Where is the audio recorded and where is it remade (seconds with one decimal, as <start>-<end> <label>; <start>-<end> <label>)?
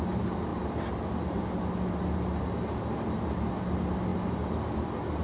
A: 0.0-5.2 recorded